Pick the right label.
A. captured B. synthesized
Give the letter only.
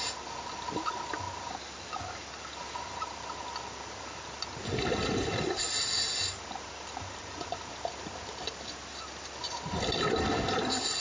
A